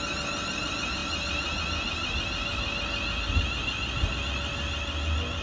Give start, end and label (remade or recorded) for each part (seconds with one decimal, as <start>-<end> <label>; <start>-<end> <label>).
0.0-5.4 recorded